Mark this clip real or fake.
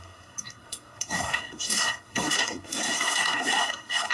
fake